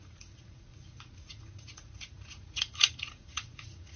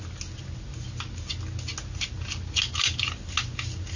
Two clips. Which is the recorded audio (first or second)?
second